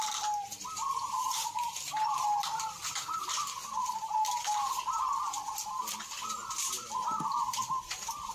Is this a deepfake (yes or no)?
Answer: no